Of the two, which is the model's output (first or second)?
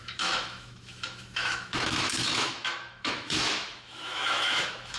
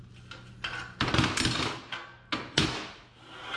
first